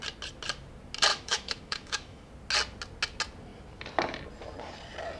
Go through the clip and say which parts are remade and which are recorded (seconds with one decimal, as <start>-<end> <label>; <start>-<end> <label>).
0.0-1.1 recorded; 1.1-2.3 remade; 2.3-5.2 recorded